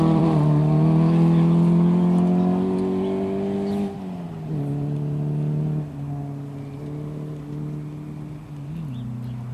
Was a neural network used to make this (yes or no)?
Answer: no